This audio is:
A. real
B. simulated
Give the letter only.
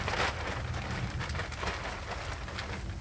A